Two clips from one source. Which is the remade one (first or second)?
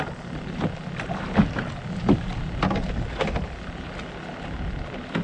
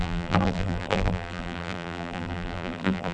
second